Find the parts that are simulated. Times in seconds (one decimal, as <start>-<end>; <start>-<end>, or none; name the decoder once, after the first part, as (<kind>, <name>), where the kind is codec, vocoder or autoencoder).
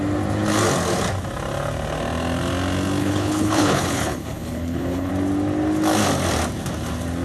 3.0-5.1 (codec, HILCodec)